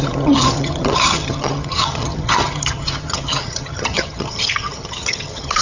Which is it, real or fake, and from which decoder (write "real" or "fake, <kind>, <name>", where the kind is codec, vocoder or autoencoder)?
fake, vocoder, HiFi-GAN